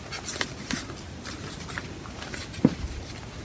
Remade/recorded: recorded